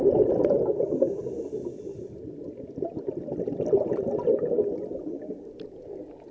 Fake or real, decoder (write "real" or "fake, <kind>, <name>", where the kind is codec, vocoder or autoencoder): real